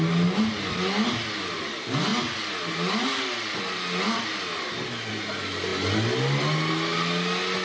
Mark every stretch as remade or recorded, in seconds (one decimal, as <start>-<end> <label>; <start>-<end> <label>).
0.0-7.6 recorded